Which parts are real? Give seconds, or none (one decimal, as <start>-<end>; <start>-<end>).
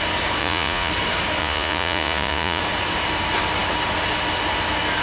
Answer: 0.0-0.4; 0.9-1.4; 2.6-5.0